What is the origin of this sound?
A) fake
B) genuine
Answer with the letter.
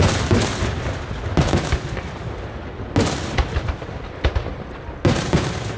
B